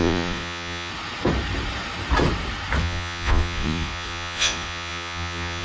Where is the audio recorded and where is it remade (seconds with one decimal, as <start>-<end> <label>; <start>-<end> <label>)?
0.0-0.9 remade; 0.9-2.8 recorded; 2.8-5.6 remade